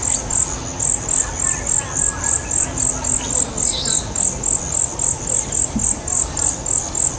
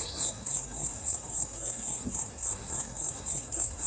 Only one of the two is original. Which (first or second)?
first